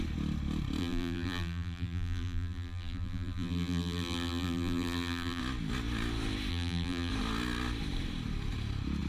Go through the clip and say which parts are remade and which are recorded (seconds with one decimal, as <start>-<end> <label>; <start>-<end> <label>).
0.0-0.8 recorded; 0.8-5.4 remade; 5.4-6.5 recorded; 6.5-7.1 remade; 7.1-9.1 recorded